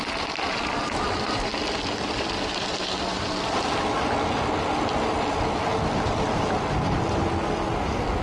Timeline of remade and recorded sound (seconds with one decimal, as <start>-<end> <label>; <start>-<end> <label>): 0.0-8.2 recorded